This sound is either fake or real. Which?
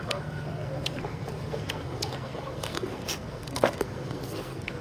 fake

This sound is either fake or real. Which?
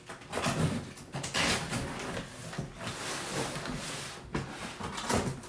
real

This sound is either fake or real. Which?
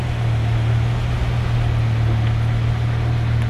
real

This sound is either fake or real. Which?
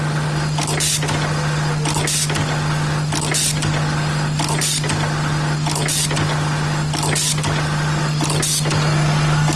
real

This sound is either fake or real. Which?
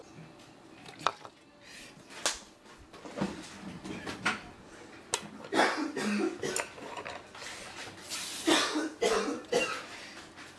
real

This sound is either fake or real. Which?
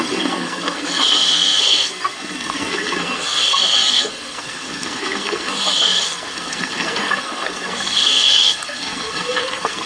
fake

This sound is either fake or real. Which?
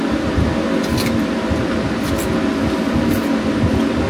real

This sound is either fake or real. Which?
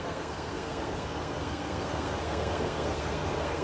fake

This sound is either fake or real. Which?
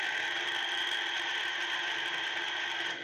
real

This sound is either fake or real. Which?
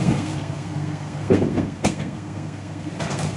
fake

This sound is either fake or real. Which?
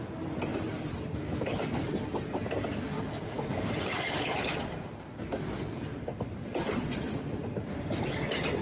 real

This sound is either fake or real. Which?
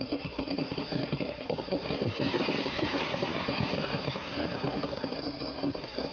fake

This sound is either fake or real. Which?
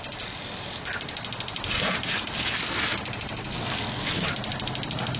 real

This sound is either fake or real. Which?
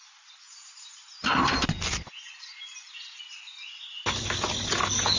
real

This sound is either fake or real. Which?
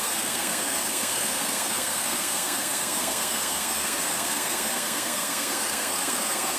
fake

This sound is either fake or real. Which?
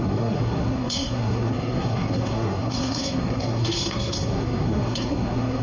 fake